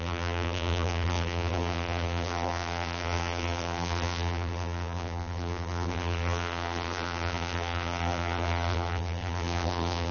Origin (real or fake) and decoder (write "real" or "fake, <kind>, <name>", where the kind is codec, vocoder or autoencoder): fake, vocoder, BigVGAN v2